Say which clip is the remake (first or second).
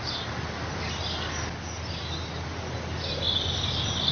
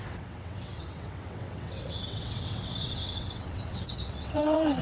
second